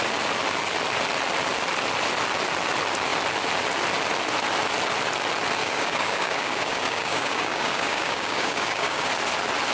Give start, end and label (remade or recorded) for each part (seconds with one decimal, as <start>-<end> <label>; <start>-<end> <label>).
0.0-5.6 recorded; 5.6-9.1 remade; 9.1-9.7 recorded